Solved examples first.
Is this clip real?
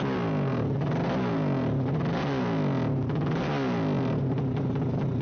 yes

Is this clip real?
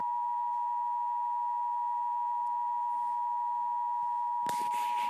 yes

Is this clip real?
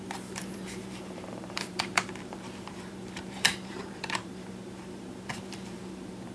no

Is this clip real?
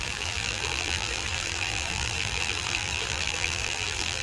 no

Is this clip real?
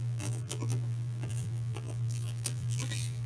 no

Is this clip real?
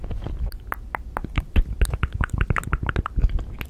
yes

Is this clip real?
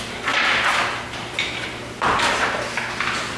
yes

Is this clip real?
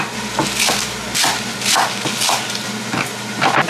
yes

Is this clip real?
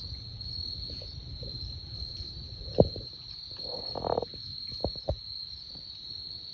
yes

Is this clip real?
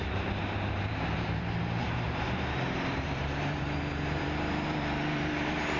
no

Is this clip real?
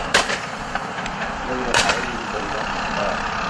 no